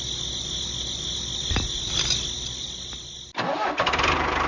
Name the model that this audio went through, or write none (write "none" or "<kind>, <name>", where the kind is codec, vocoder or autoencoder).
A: none